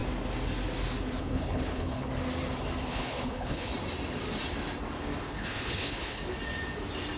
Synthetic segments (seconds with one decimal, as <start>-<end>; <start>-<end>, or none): 1.2-2.1; 2.9-3.7; 5.2-6.2